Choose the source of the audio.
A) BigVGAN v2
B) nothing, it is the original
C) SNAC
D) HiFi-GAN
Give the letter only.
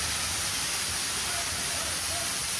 B